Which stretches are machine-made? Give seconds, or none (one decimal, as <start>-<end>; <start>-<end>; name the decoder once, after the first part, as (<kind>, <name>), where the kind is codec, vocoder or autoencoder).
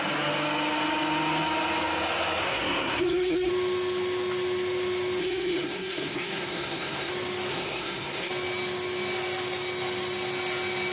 2.4-3.5 (codec, SNAC); 5.2-7.1; 7.5-8.3